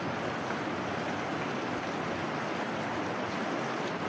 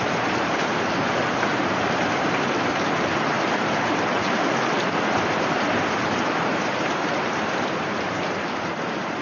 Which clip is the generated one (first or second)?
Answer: second